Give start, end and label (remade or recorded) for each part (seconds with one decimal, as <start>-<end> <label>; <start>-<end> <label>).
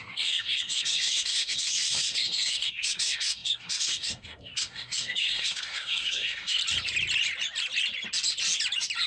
0.0-6.6 remade; 6.6-9.1 recorded